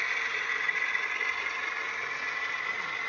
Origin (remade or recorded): recorded